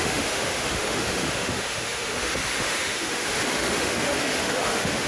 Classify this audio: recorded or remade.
remade